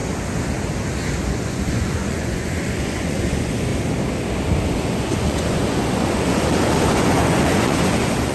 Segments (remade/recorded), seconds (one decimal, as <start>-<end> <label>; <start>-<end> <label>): 0.0-1.3 recorded; 1.3-3.7 remade; 3.7-4.7 recorded; 4.7-8.3 remade